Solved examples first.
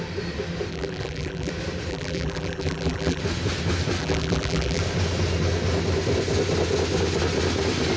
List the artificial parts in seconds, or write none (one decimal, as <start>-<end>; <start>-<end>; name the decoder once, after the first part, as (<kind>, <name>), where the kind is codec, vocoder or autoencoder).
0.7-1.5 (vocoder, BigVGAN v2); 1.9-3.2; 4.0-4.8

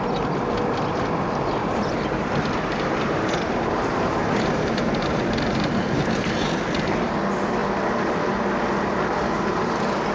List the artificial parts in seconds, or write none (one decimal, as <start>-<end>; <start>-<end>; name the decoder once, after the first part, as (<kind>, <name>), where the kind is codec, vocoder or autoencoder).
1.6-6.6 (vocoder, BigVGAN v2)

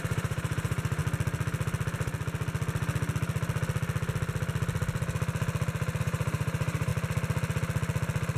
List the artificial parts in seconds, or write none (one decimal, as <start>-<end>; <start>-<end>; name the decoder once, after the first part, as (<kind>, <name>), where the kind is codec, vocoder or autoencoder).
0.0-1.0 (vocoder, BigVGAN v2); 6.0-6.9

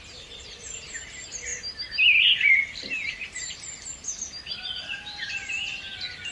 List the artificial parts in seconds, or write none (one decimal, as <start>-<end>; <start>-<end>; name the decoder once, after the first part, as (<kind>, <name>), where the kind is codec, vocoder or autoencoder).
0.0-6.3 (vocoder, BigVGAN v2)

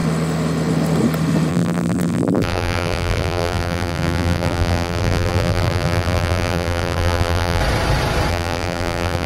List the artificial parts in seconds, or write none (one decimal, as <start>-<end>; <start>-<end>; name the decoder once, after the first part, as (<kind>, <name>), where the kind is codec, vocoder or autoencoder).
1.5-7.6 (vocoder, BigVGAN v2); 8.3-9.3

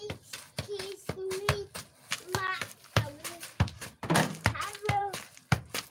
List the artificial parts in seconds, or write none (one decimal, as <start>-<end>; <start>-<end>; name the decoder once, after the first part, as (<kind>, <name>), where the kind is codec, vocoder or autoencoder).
none

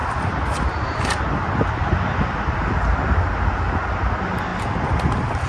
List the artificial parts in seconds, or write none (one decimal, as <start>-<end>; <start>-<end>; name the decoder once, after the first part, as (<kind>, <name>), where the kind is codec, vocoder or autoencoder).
0.0-3.3 (vocoder, BigVGAN v2); 4.5-5.5

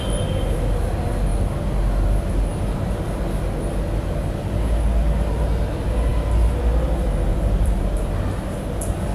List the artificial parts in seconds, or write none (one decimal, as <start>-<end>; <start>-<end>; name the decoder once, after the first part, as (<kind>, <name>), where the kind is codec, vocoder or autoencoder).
7.3-8.1 (vocoder, BigVGAN v2)